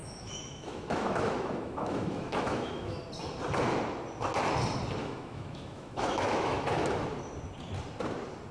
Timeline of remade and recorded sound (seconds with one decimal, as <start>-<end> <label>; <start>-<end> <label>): 0.0-3.0 remade; 3.0-5.0 recorded; 5.0-7.0 remade; 7.0-8.5 recorded